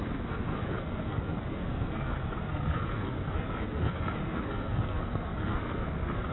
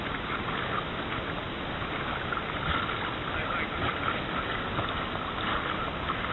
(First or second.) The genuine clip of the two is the second